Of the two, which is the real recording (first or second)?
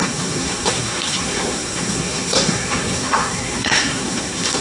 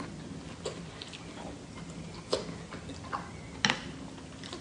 second